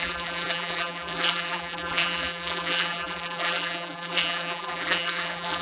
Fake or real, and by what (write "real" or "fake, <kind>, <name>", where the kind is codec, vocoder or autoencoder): fake, vocoder, BigVGAN v2